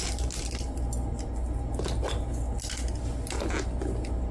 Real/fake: real